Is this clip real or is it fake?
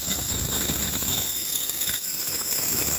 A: fake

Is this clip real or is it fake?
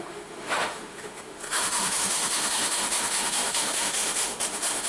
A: fake